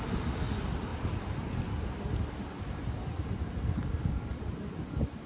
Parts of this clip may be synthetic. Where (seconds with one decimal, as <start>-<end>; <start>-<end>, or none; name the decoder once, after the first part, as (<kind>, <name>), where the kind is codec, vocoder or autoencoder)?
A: 0.9-1.8 (vocoder, BigVGAN v2); 3.8-4.5